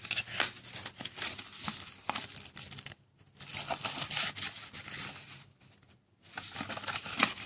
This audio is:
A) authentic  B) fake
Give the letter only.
A